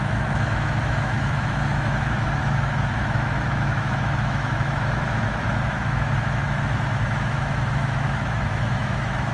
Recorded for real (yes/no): no